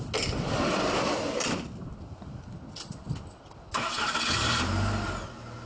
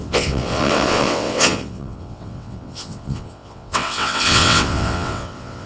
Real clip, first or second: first